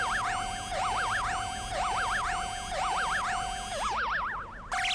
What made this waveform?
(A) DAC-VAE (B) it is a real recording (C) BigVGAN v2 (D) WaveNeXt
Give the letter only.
B